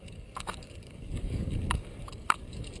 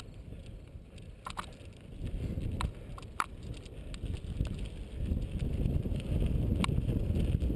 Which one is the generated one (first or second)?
first